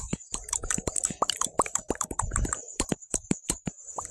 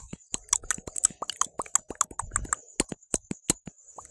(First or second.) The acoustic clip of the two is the second